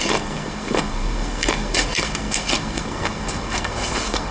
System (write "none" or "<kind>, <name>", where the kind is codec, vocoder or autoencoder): codec, SNAC